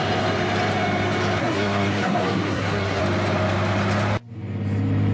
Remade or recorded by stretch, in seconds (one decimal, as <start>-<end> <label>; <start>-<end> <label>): 0.0-1.4 recorded; 1.4-3.0 remade; 3.0-5.1 recorded